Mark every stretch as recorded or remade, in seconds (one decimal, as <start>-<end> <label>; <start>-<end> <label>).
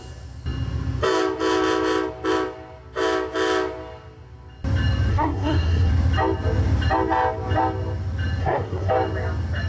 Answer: 0.0-5.1 recorded; 5.1-5.9 remade; 5.9-8.4 recorded; 8.4-8.9 remade; 8.9-9.7 recorded